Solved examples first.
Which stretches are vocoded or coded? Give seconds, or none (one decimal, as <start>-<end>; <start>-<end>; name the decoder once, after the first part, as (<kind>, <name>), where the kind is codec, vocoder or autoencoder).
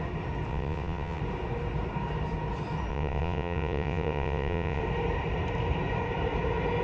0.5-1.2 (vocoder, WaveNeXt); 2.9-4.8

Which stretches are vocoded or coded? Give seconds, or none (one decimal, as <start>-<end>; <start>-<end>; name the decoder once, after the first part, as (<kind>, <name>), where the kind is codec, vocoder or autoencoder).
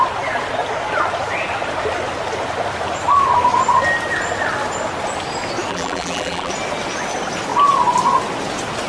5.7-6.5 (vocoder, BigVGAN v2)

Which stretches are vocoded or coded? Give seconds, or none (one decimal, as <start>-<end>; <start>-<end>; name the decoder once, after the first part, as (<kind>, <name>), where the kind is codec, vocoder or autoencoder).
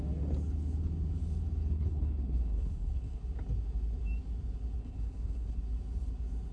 1.6-3.2 (codec, HILCodec); 4.8-5.6